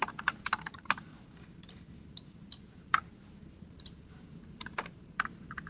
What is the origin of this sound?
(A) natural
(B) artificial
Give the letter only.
B